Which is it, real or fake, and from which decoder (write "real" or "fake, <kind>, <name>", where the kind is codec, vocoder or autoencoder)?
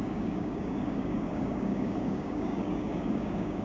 fake, codec, DAC